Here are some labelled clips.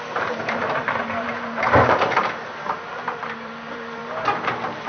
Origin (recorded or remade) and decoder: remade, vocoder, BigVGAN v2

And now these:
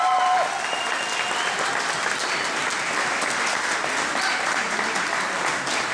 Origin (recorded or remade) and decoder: recorded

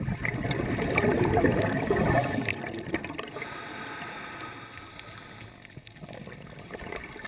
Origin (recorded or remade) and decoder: recorded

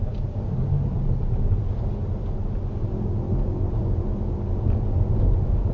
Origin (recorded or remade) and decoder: recorded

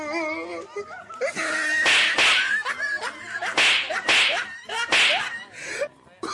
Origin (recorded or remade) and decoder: recorded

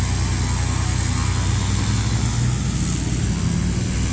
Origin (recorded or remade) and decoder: recorded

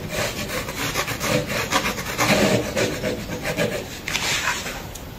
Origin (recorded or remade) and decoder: recorded